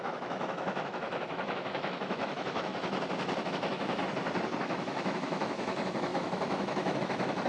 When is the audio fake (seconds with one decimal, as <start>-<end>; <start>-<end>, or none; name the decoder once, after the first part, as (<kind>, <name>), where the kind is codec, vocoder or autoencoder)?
0.0-2.7 (autoencoder, DAC-VAE); 3.5-4.0; 4.6-7.5